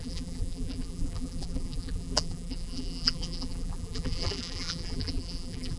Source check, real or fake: fake